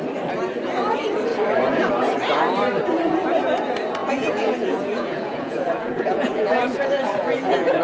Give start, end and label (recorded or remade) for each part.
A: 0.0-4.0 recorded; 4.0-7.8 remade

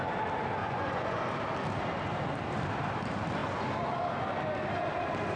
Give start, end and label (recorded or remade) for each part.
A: 0.0-0.6 recorded; 0.6-1.2 remade; 1.2-5.4 recorded

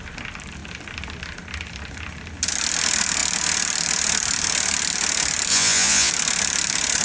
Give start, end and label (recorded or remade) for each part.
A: 0.0-5.5 recorded; 5.5-6.1 remade; 6.1-7.0 recorded

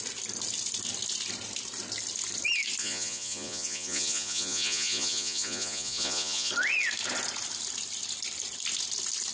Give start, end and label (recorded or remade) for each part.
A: 0.0-2.8 recorded; 2.8-6.5 remade; 6.5-9.3 recorded